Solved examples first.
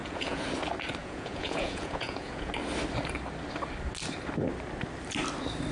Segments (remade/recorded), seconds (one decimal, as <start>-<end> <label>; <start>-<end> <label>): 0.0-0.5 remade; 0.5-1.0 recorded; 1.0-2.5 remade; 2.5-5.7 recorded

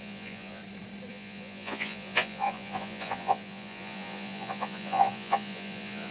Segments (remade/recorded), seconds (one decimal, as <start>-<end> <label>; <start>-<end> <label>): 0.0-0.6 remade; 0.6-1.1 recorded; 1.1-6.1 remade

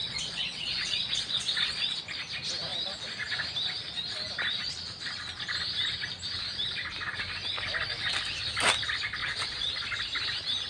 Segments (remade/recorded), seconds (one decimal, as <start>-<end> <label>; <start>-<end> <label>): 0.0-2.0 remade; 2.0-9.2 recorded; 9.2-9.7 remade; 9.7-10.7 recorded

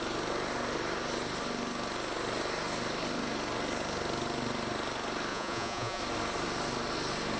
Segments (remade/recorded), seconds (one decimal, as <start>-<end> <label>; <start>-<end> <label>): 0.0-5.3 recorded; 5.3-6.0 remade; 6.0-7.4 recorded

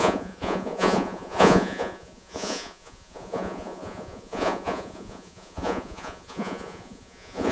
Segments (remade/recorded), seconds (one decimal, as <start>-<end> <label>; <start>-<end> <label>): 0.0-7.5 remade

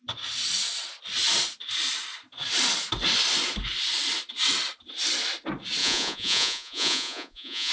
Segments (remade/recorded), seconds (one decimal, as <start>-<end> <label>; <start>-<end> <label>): 0.0-5.8 recorded; 5.8-7.7 remade